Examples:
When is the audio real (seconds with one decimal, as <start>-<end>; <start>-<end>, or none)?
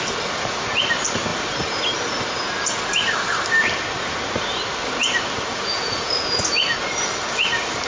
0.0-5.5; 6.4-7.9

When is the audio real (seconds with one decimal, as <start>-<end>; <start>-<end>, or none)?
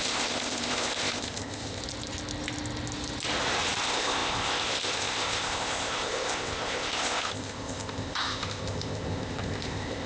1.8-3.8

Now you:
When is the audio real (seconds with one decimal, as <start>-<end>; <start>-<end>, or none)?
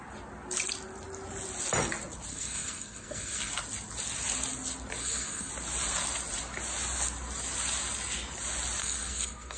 0.0-2.3; 3.5-5.0; 5.5-8.8